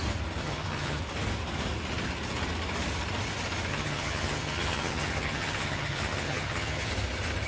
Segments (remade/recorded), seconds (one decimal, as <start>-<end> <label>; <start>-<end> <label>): 0.0-0.4 recorded; 0.4-1.0 remade; 1.0-3.7 recorded; 3.7-6.9 remade; 6.9-7.5 recorded